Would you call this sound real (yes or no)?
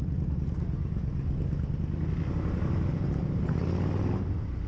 yes